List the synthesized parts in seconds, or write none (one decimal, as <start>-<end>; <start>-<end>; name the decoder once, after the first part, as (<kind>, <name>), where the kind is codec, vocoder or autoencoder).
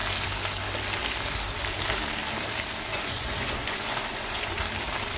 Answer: 2.9-4.6 (vocoder, Vocos)